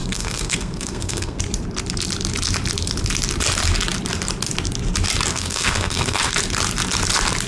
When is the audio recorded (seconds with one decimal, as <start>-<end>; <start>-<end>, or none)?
1.4-5.3; 6.3-7.5